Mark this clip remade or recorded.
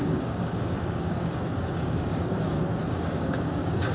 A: remade